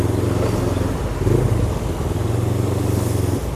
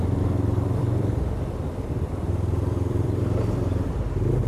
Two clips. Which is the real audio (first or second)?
first